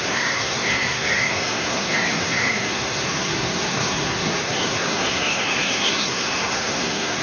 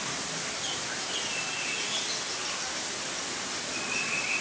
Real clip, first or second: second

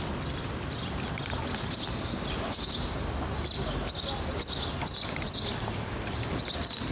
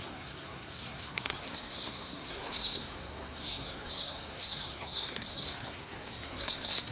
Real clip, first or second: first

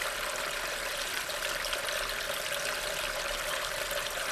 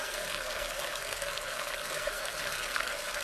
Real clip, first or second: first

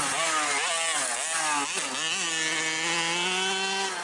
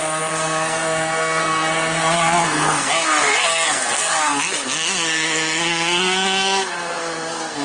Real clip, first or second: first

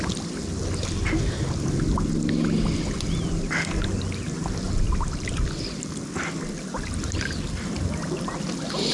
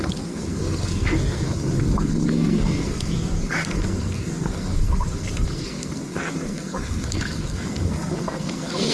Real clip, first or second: first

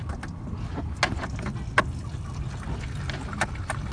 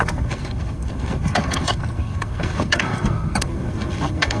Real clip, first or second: first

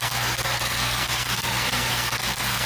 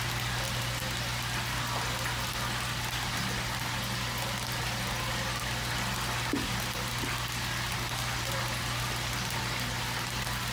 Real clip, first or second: second